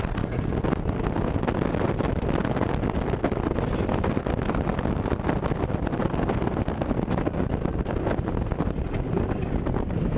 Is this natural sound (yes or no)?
yes